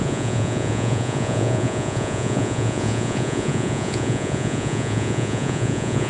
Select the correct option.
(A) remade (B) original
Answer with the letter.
A